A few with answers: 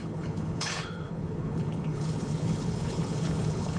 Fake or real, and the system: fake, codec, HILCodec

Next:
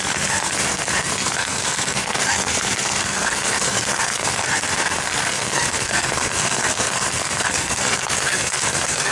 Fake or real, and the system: fake, codec, SNAC